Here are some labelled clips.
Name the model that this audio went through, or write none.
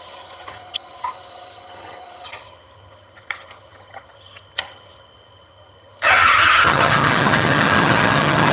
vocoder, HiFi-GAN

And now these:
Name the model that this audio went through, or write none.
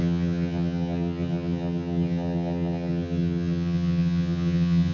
vocoder, HiFi-GAN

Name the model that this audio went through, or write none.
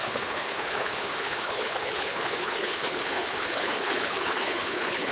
codec, HILCodec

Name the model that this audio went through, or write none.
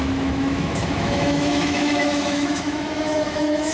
autoencoder, DAC-VAE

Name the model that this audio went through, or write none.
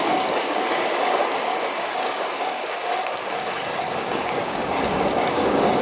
codec, DAC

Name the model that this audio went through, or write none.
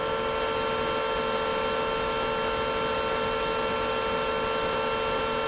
none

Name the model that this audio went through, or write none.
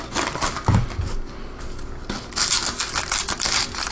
none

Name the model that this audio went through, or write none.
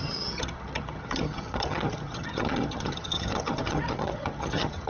vocoder, HiFi-GAN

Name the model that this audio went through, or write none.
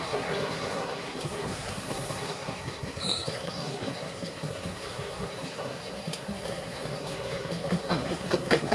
codec, SNAC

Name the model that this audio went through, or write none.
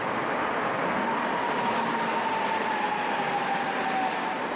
none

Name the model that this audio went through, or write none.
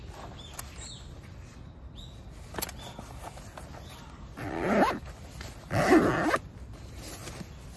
none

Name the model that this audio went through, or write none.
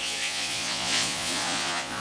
vocoder, Vocos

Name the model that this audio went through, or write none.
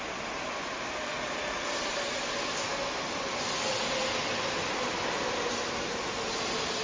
none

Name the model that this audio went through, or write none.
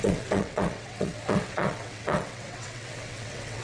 vocoder, WaveNeXt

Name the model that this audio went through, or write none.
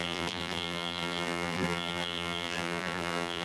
vocoder, BigVGAN v2